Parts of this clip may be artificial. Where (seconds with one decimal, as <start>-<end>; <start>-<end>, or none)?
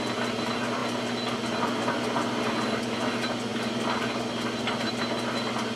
none